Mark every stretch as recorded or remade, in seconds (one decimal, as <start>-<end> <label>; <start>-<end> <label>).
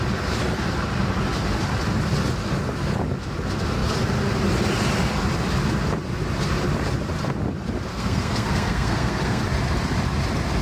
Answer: 0.0-7.9 recorded; 7.9-9.4 remade; 9.4-10.6 recorded